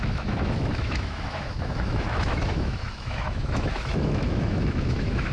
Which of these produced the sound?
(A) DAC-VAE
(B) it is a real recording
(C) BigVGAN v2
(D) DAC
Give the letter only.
A